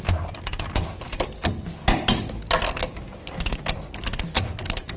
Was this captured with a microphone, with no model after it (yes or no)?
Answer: yes